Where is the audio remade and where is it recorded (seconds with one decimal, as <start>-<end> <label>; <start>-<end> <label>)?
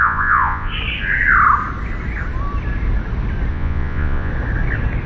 0.0-0.7 remade; 0.7-3.5 recorded; 3.5-4.3 remade; 4.3-5.1 recorded